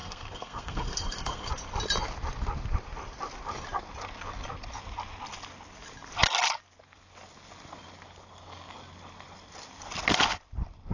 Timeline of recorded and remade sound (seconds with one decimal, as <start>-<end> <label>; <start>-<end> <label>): 0.0-1.5 remade; 1.5-10.9 recorded